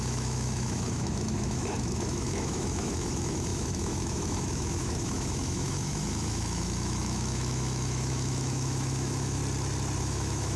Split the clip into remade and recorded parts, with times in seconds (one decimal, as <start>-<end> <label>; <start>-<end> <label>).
0.0-9.4 remade; 9.4-10.0 recorded; 10.0-10.6 remade